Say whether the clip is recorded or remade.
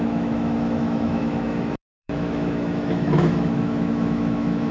remade